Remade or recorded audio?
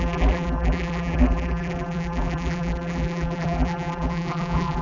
remade